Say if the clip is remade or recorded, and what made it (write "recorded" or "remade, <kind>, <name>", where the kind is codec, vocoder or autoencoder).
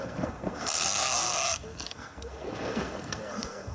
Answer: remade, codec, SNAC